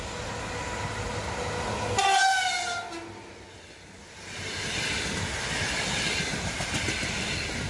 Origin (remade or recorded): recorded